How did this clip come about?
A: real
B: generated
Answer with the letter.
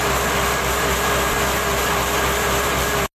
A